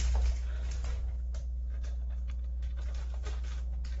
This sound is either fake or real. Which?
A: real